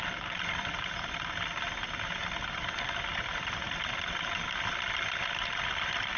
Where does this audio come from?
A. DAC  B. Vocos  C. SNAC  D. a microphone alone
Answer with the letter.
D